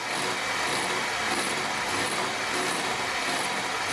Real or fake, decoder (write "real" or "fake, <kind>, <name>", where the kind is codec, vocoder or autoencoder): real